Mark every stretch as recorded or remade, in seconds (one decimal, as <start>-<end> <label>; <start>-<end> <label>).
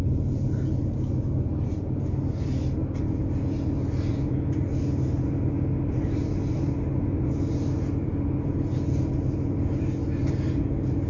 0.0-11.1 recorded